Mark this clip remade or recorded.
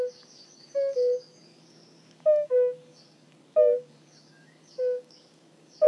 remade